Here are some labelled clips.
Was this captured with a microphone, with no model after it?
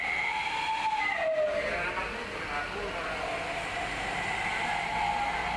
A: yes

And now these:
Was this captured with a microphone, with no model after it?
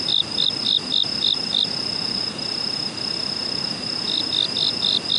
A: yes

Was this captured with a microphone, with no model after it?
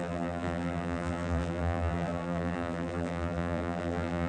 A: no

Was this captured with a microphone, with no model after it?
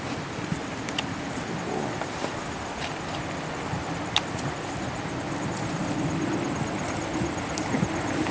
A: yes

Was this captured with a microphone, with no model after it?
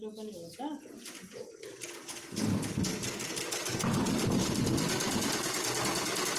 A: yes